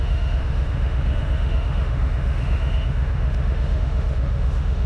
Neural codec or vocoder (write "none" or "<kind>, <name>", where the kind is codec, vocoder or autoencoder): autoencoder, DAC-VAE